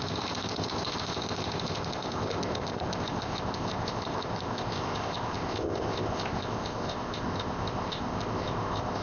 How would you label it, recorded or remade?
remade